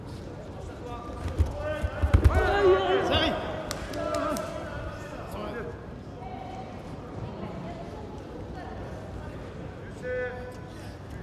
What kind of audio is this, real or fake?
real